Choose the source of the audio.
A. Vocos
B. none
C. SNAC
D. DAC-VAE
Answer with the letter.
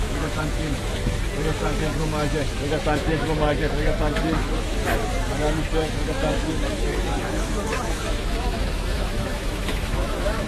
D